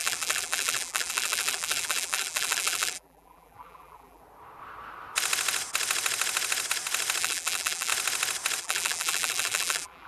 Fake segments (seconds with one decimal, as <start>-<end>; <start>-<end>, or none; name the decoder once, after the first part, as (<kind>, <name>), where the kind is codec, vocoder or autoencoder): 0.0-4.2 (vocoder, BigVGAN v2); 7.2-7.9; 8.6-10.1

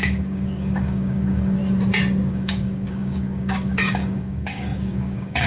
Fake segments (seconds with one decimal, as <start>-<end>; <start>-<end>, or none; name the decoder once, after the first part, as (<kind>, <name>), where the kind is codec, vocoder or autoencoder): 0.0-1.6 (codec, DAC); 2.3-5.5

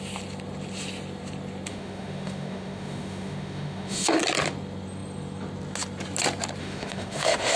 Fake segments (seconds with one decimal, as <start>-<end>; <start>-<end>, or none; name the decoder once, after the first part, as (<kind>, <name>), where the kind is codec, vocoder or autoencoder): 1.7-4.2 (autoencoder, DAC-VAE); 6.6-7.6

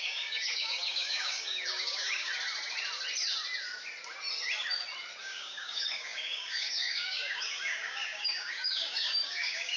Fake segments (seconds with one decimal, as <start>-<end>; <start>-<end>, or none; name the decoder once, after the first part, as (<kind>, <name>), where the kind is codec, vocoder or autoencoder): 0.0-2.3 (codec, DAC); 5.2-9.8

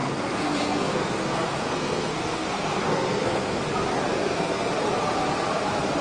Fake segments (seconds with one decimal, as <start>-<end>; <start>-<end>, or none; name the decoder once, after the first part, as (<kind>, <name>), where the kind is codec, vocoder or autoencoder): 0.0-3.6 (codec, SNAC); 4.1-4.7

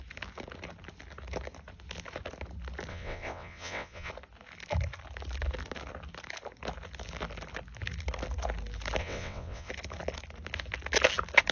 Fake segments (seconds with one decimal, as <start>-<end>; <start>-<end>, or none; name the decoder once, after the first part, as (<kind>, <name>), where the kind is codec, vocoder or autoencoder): 2.9-4.1 (vocoder, WaveNeXt); 9.0-9.7

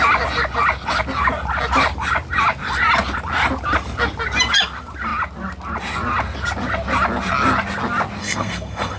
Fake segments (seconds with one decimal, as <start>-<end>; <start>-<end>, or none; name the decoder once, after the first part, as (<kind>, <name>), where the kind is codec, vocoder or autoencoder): 8.2-9.0 (codec, SNAC)

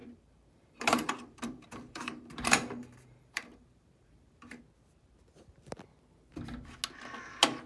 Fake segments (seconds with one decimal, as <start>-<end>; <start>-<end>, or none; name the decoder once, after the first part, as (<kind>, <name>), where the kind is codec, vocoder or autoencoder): 0.0-4.6 (vocoder, BigVGAN v2)